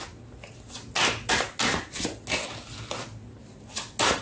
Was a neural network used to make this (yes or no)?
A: no